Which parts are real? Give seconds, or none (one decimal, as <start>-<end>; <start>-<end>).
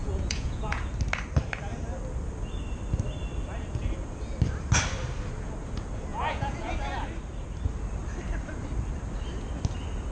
0.8-6.1; 6.7-10.1